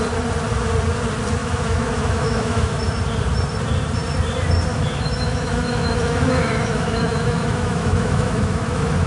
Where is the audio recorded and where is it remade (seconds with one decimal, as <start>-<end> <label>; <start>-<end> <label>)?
0.0-1.4 recorded; 1.4-2.8 remade; 2.8-4.7 recorded; 4.7-9.1 remade